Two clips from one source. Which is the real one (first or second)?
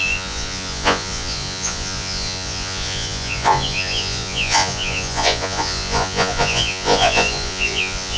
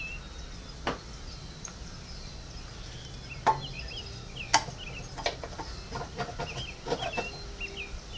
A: second